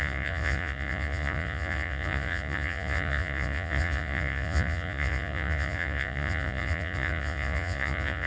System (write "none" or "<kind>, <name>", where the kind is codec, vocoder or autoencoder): vocoder, Vocos